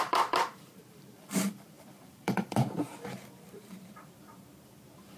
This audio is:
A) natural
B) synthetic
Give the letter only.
B